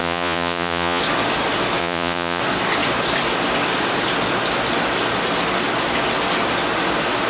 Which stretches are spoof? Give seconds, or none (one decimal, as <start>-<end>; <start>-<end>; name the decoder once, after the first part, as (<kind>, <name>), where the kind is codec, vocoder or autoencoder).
0.0-1.0 (vocoder, Vocos); 1.8-2.4